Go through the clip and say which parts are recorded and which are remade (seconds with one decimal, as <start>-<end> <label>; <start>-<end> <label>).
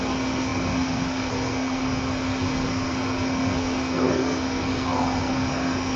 0.0-6.0 remade